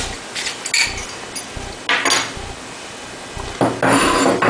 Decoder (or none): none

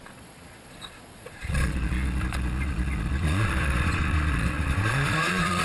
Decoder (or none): vocoder, Vocos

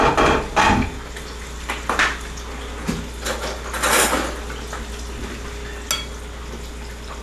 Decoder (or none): none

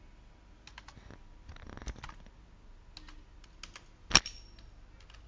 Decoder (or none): none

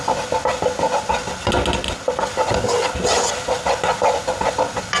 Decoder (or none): none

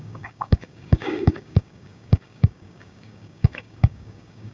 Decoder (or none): codec, DAC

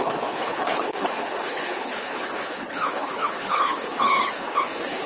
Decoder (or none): codec, HILCodec